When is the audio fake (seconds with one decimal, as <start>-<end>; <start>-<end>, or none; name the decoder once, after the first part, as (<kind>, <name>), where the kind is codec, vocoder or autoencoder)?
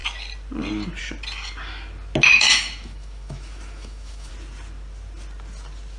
2.3-4.3 (autoencoder, DAC-VAE)